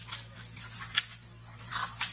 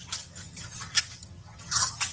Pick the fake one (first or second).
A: second